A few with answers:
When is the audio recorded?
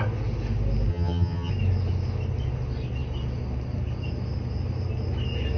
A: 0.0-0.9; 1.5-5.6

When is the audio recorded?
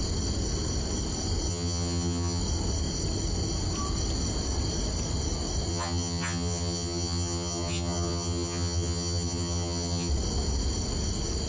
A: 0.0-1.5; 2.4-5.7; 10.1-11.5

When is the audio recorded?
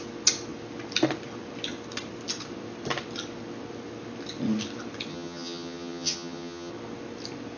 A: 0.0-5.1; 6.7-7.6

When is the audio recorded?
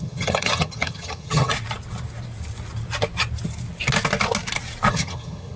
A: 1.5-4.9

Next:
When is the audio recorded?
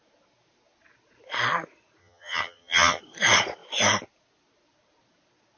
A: 0.0-2.0; 3.0-5.6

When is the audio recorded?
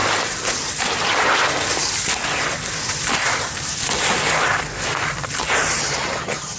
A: 0.0-5.8